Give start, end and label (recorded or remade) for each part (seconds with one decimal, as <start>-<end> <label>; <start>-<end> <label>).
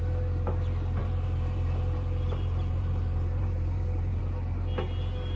0.0-1.0 recorded; 1.0-4.2 remade; 4.2-5.4 recorded